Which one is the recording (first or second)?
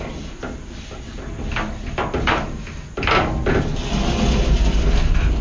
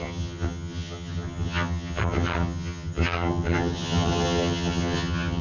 first